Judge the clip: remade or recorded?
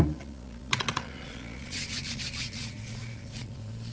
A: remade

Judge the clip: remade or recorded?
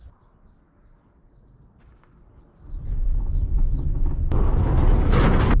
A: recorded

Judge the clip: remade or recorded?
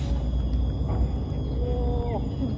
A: recorded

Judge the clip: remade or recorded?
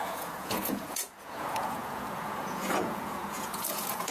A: remade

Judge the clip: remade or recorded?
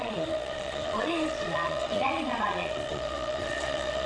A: remade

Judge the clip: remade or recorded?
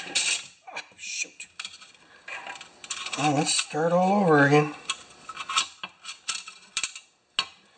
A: recorded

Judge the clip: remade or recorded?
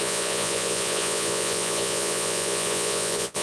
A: remade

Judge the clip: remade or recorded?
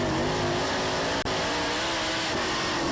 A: recorded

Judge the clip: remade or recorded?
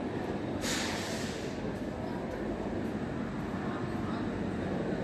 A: recorded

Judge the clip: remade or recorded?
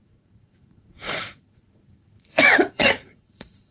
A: remade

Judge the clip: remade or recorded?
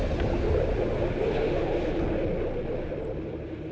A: recorded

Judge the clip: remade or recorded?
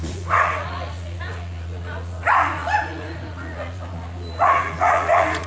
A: remade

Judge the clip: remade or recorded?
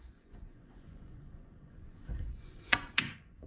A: remade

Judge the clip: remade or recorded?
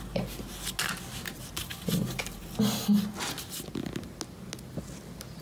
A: recorded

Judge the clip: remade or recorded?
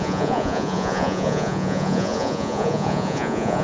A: remade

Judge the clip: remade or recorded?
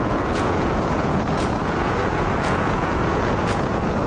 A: remade